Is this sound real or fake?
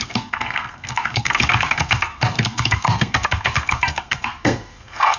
fake